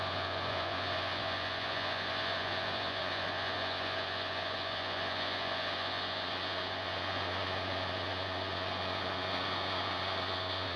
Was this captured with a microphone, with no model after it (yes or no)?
no